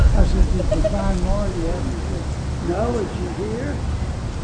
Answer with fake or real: real